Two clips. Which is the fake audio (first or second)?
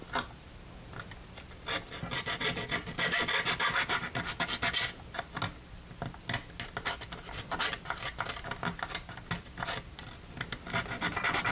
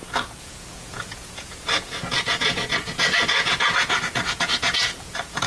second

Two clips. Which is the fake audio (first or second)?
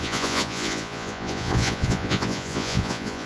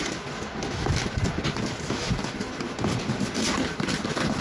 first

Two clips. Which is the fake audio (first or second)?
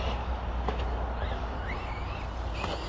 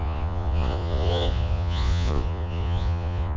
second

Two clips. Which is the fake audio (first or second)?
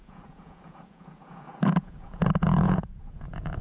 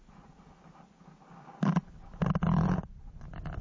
first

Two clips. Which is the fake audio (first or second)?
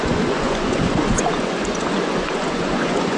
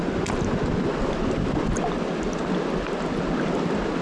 first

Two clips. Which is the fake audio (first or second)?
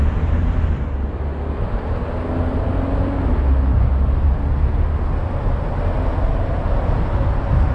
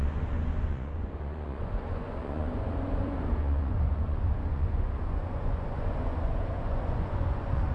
second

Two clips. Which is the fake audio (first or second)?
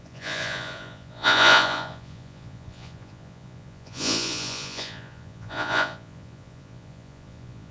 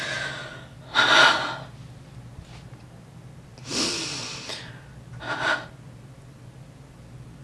first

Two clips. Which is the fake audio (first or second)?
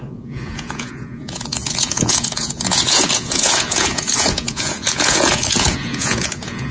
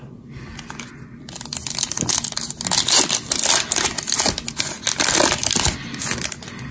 first